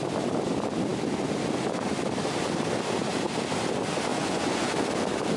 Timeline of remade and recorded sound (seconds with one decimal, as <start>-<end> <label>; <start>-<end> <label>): 0.0-4.1 recorded; 4.1-4.7 remade; 4.7-5.4 recorded